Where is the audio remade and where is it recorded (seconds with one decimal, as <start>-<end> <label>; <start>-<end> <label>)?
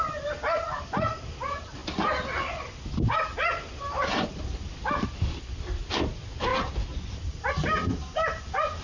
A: 0.0-8.8 recorded